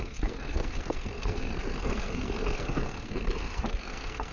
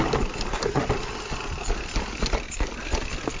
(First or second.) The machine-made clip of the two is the first